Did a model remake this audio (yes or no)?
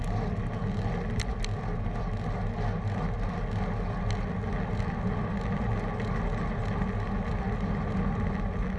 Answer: no